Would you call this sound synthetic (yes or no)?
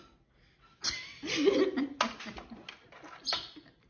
no